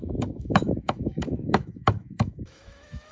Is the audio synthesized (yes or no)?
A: yes